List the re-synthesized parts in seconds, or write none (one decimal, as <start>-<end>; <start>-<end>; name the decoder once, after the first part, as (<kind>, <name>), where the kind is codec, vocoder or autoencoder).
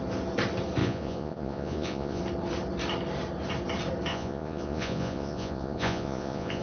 0.8-2.2 (vocoder, Vocos); 4.1-6.6